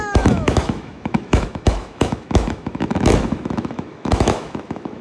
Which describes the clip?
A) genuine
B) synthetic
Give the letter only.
B